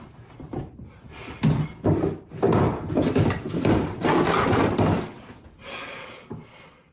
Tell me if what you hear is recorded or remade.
recorded